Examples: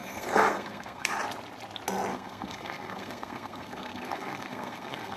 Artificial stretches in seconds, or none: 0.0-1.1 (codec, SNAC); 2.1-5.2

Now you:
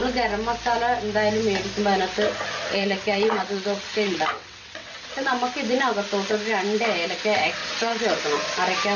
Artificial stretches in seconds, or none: 2.7-5.3 (vocoder, WaveNeXt); 7.6-8.2

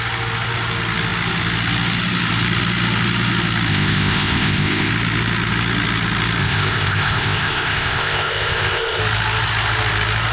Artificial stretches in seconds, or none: 3.7-4.9 (codec, ZipCodec); 6.4-9.0

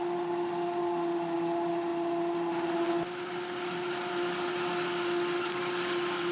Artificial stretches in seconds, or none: none

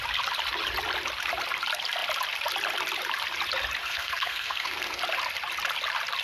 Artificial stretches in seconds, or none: 3.8-5.0 (codec, SNAC)

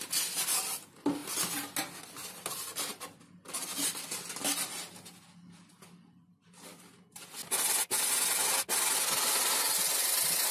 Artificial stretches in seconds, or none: none

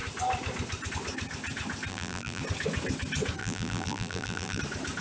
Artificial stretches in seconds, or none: 1.9-2.4 (vocoder, BigVGAN v2); 3.4-4.6

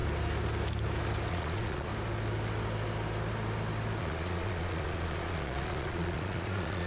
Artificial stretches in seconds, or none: 1.3-1.9 (vocoder, Vocos); 4.0-6.9